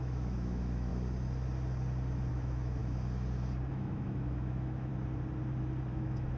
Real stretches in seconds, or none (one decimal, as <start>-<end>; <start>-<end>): 0.9-2.3; 2.8-3.7; 4.9-5.9